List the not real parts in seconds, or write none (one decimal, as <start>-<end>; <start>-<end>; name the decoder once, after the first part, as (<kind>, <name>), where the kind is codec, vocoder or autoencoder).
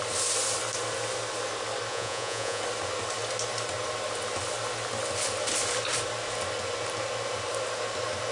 1.9-2.6 (vocoder, Vocos)